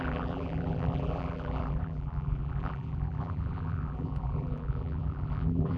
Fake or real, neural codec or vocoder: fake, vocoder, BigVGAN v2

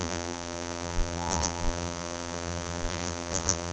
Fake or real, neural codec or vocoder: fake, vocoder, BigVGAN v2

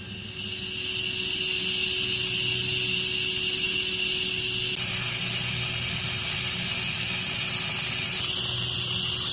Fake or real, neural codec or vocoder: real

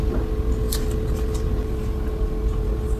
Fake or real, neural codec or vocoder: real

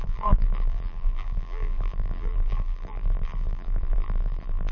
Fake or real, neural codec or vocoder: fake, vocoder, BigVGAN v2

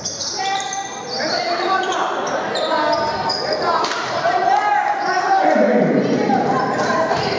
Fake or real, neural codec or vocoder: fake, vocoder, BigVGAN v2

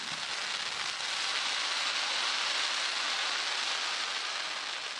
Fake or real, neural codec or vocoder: real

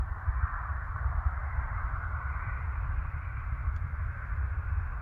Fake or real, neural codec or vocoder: fake, vocoder, BigVGAN v2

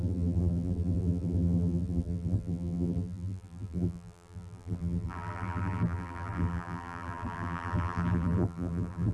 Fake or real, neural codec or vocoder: fake, vocoder, BigVGAN v2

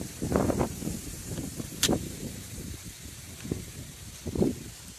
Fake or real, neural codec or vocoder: fake, vocoder, BigVGAN v2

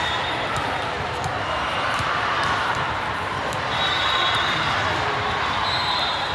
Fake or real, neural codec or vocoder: fake, vocoder, BigVGAN v2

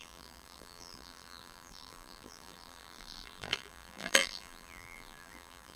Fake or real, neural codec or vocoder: fake, vocoder, BigVGAN v2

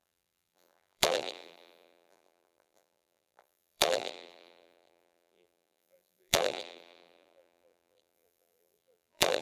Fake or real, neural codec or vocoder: fake, vocoder, BigVGAN v2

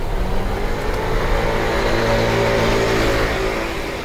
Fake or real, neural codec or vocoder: real